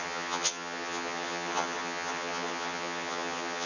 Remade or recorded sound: remade